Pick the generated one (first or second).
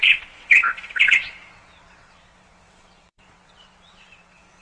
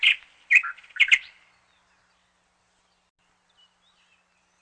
first